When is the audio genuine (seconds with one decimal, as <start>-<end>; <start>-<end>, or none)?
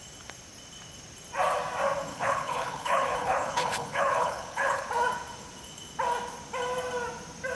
0.0-2.1; 4.9-7.5